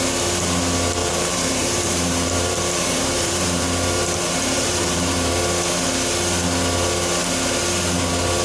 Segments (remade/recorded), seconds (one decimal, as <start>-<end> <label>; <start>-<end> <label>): 0.0-1.0 recorded; 1.0-5.3 remade; 5.3-8.4 recorded